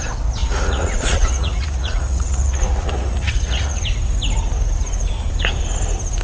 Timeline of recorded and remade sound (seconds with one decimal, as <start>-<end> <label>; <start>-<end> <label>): 0.0-0.4 recorded; 0.4-3.8 remade; 3.8-6.2 recorded